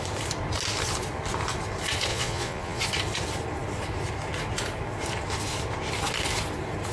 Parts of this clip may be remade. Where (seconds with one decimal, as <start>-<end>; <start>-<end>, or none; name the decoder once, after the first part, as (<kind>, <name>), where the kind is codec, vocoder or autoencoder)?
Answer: 2.1-2.8 (vocoder, Vocos)